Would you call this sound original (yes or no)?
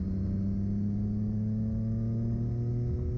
yes